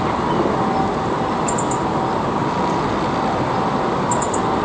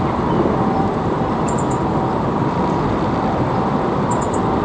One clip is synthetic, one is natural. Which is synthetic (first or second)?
second